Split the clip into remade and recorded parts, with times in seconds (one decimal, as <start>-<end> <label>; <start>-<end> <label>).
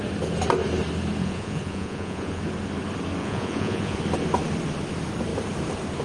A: 0.0-1.2 recorded; 1.2-2.4 remade; 2.4-3.2 recorded; 3.2-4.0 remade; 4.0-6.0 recorded